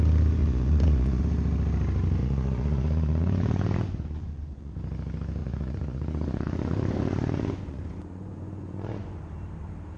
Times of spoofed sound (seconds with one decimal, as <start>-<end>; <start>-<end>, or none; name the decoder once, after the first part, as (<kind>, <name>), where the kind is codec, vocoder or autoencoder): 0.4-1.2 (vocoder, Vocos); 2.2-4.7; 5.4-9.3